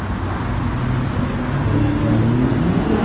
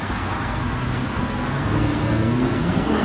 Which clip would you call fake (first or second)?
second